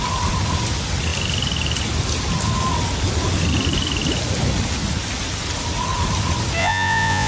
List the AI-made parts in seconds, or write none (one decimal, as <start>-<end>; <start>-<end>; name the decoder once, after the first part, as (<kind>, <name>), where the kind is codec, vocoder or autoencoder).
6.6-7.3 (vocoder, Vocos)